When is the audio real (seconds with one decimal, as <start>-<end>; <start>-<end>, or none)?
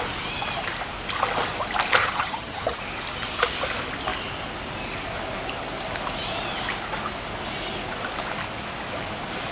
0.0-2.0; 2.8-9.5